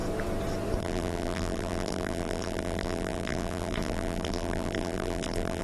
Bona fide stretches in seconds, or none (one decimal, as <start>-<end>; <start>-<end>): 0.0-0.8